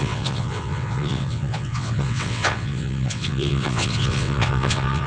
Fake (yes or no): yes